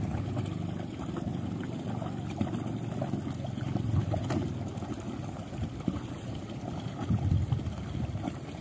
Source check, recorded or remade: recorded